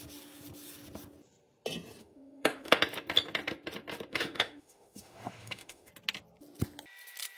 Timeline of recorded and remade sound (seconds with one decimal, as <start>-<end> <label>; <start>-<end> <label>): 0.0-2.0 recorded; 2.0-2.8 remade; 2.8-4.1 recorded; 4.1-5.9 remade; 5.9-7.4 recorded